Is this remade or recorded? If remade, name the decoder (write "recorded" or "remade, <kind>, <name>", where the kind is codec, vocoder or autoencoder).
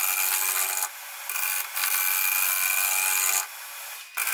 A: recorded